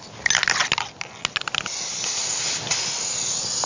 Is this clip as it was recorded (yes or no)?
yes